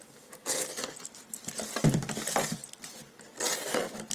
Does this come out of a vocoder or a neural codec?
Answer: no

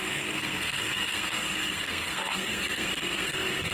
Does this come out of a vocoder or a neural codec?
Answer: yes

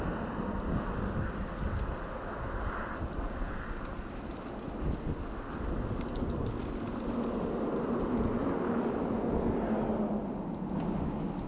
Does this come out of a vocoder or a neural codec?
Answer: no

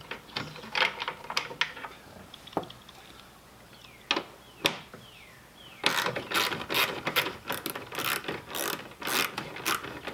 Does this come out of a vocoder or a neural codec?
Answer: no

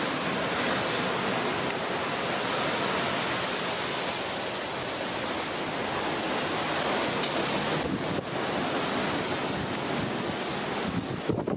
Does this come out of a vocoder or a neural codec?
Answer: no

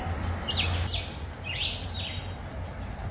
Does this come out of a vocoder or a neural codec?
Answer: no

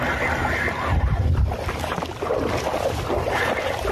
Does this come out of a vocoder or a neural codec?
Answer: no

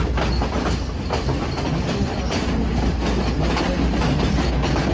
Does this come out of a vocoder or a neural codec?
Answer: no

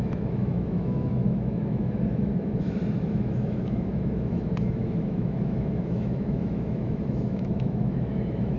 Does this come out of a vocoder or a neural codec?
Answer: yes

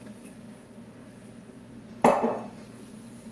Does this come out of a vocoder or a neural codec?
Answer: no